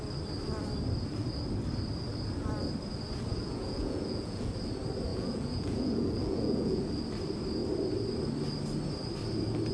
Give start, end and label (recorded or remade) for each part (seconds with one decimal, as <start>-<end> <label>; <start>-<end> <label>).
0.0-3.3 recorded; 3.3-4.5 remade; 4.5-5.1 recorded; 5.1-6.8 remade; 6.8-9.7 recorded